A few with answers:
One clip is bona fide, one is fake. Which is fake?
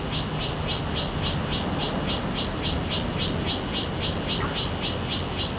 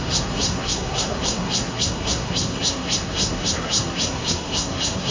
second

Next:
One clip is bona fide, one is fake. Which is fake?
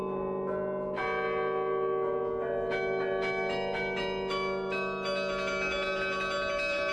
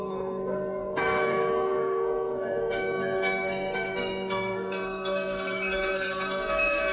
second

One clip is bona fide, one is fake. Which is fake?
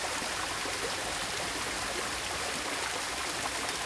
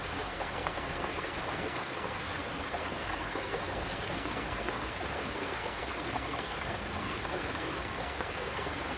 second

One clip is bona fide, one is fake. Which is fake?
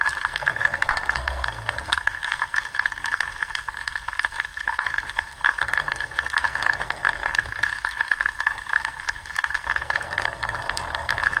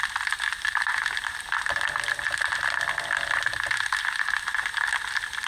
first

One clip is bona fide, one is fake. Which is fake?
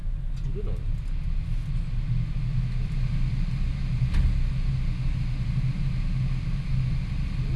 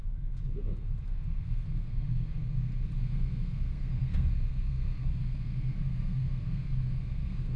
second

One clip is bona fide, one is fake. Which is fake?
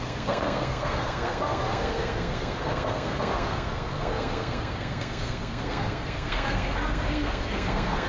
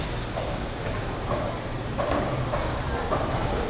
first